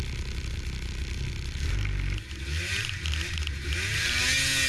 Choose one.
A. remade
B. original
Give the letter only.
B